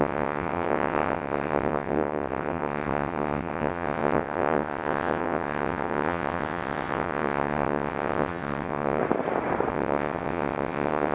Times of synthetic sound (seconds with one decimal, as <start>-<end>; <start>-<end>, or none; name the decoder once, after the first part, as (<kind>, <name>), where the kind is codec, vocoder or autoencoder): 0.0-9.0 (vocoder, WaveNeXt); 9.7-11.1